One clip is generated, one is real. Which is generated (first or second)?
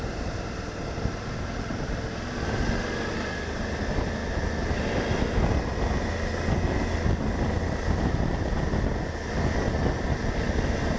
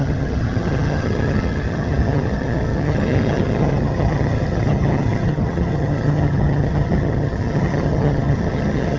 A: second